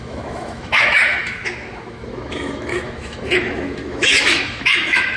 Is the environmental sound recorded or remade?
remade